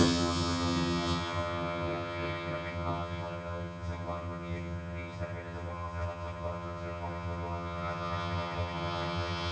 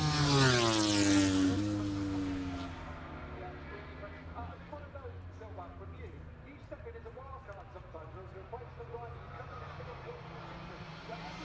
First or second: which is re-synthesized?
first